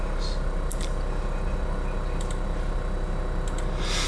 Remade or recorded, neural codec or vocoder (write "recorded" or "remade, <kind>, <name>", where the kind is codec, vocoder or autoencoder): recorded